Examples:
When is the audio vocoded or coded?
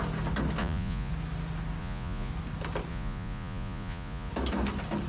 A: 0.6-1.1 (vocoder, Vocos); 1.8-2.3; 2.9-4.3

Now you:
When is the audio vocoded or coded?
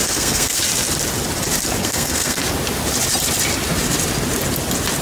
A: 0.0-0.6 (codec, SNAC); 1.8-2.4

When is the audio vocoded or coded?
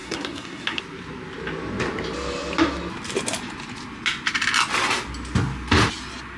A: 0.0-0.8 (codec, SNAC)